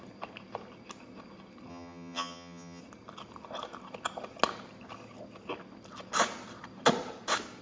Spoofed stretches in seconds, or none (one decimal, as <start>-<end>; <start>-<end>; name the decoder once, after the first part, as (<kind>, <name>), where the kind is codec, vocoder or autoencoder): 1.7-2.8 (vocoder, HiFi-GAN)